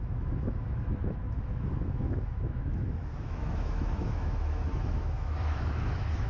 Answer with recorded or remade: remade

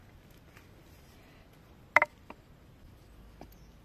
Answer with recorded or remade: recorded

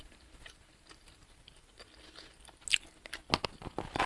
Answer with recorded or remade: recorded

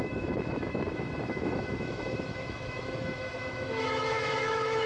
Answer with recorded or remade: remade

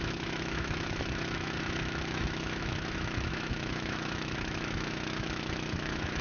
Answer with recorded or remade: remade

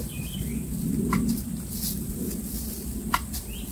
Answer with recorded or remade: recorded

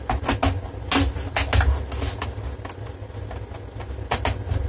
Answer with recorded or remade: recorded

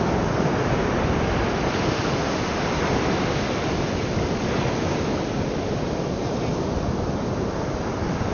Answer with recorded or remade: recorded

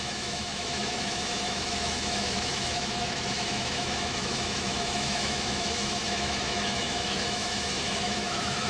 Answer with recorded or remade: remade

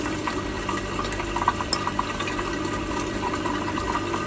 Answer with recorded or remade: recorded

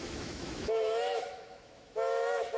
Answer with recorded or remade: remade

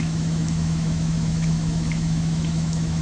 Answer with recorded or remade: remade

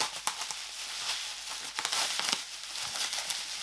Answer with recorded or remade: recorded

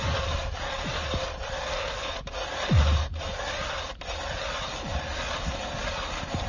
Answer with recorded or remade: recorded